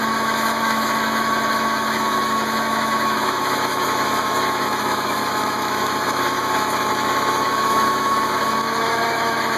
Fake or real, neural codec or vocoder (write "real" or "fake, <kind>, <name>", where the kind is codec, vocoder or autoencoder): fake, autoencoder, DAC-VAE